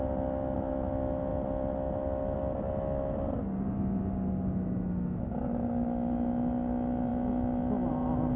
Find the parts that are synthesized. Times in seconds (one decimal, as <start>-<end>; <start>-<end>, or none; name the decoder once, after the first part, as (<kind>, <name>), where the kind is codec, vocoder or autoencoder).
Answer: none